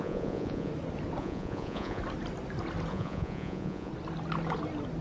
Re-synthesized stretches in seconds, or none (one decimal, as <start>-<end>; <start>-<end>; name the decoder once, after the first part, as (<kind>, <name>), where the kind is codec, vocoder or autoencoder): 0.0-0.7 (vocoder, Vocos); 1.2-2.0; 2.9-3.9

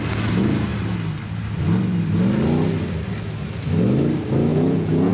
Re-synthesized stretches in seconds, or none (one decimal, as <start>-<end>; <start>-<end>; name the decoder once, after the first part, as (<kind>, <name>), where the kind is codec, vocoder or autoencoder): 4.5-5.1 (vocoder, Vocos)

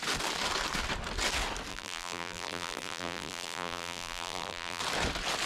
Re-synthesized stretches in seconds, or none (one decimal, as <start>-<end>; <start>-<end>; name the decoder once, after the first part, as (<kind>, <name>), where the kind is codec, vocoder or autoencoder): 1.7-4.8 (vocoder, BigVGAN v2)

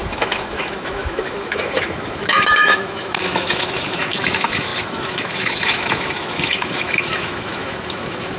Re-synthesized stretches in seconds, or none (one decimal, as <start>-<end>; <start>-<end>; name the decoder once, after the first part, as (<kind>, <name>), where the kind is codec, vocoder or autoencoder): 0.0-8.4 (autoencoder, DAC-VAE)

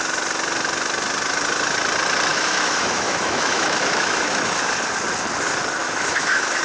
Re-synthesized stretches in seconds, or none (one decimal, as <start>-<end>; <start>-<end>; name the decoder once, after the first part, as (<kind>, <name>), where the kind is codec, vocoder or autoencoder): 2.3-4.6 (autoencoder, DAC-VAE); 5.8-6.6